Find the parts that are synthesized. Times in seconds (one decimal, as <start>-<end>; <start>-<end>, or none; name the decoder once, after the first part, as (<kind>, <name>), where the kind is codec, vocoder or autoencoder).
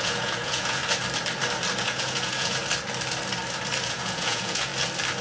0.0-0.8 (vocoder, Vocos); 1.8-2.6; 3.9-4.7